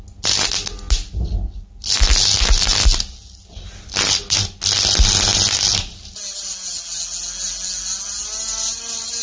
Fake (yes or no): no